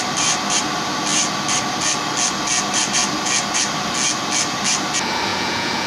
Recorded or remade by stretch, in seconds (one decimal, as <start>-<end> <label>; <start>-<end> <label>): 0.0-5.3 recorded; 5.3-5.9 remade